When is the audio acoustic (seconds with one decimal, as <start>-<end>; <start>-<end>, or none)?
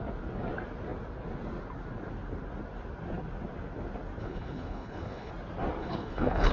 0.0-4.2; 5.3-5.8